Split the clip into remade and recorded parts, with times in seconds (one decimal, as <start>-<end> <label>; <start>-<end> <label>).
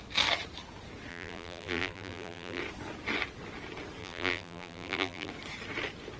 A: 0.0-1.1 recorded; 1.1-2.6 remade; 2.6-4.0 recorded; 4.0-5.3 remade; 5.3-6.2 recorded